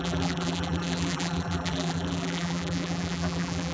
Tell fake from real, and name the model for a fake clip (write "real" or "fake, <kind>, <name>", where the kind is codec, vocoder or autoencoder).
fake, vocoder, BigVGAN v2